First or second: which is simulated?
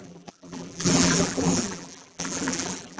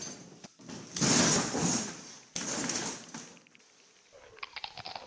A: first